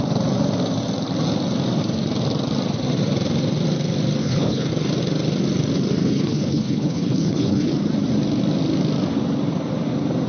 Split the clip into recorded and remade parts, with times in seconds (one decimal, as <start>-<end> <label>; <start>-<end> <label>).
0.0-4.2 recorded; 4.2-4.7 remade; 4.7-6.0 recorded; 6.0-7.7 remade; 7.7-10.3 recorded